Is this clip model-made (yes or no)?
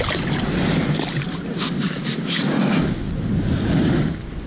no